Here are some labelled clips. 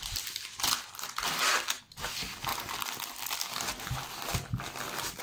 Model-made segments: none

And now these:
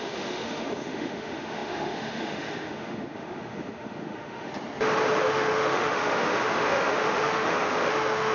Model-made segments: 0.0-4.5 (autoencoder, DAC-VAE); 5.2-8.3

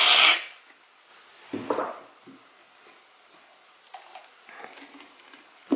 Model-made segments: none

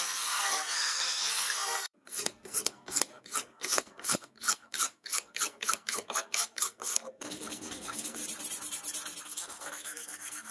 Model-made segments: 0.0-8.2 (codec, SNAC); 9.2-10.5